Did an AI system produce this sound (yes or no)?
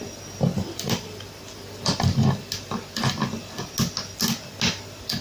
no